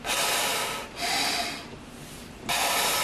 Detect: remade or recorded recorded